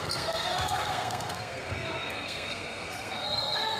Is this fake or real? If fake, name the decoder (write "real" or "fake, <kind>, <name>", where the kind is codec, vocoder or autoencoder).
fake, codec, SNAC